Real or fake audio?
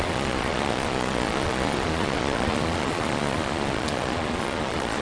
fake